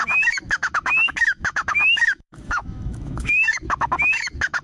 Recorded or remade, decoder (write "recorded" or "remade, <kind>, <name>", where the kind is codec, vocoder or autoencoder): remade, autoencoder, DAC-VAE